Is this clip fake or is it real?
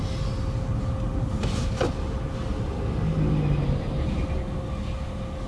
real